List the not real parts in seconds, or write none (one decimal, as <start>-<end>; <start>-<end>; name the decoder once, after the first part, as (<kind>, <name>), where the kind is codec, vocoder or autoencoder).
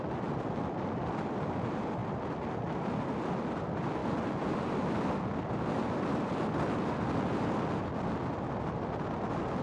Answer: none